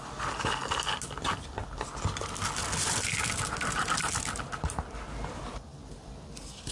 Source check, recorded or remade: recorded